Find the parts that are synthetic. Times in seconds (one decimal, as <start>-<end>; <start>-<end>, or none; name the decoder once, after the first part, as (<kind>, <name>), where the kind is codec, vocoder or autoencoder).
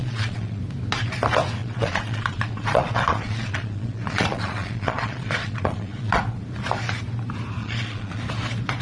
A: 0.0-0.6 (vocoder, Vocos); 1.6-6.2; 7.6-8.2